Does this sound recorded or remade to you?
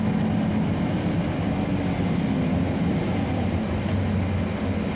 recorded